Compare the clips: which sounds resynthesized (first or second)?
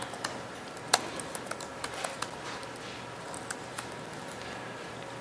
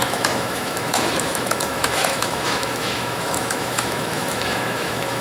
second